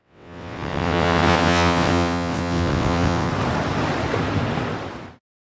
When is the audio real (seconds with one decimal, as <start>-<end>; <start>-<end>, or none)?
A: 3.3-5.5